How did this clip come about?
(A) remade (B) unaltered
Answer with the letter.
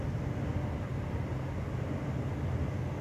B